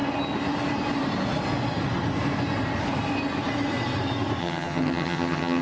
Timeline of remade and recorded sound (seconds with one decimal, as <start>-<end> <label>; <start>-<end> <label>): 0.0-4.4 recorded; 4.4-5.6 remade